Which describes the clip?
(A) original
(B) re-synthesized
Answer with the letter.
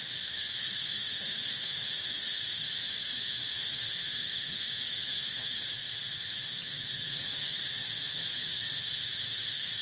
B